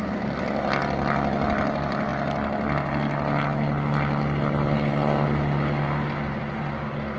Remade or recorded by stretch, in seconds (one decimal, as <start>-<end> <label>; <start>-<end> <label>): 0.0-7.2 recorded